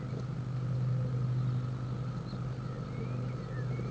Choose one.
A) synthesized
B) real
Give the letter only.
B